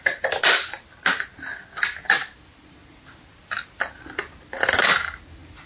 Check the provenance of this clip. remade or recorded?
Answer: recorded